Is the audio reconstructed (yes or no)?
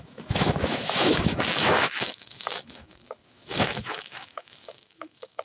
yes